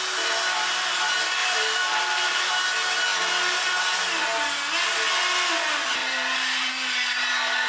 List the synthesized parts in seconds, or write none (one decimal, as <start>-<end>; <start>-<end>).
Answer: 1.4-2.5; 6.0-6.7